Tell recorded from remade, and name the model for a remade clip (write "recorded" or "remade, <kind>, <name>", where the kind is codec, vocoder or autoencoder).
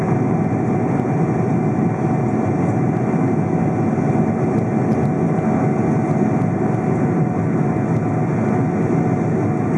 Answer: recorded